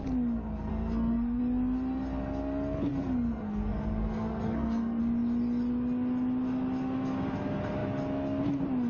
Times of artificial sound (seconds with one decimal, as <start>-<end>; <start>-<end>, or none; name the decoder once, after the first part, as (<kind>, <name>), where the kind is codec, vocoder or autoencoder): 0.7-1.4 (codec, SNAC); 2.9-5.0